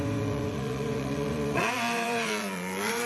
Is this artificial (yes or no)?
yes